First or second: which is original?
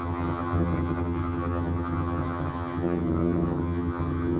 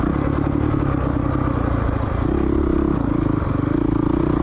second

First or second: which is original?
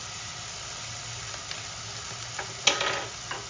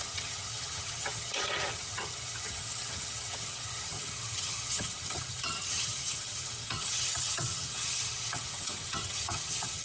first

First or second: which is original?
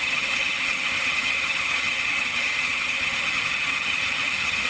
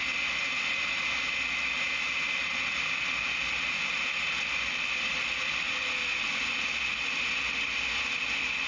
second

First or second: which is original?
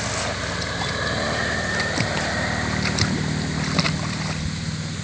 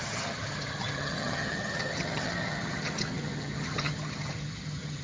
first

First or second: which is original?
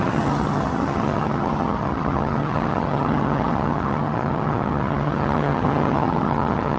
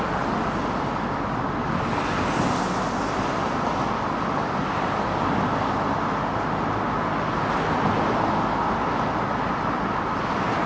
second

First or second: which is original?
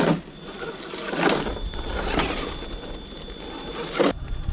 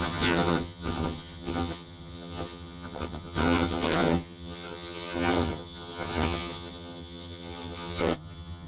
first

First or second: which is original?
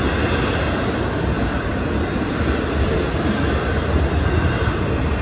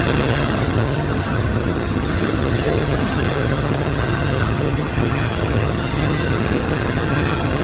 first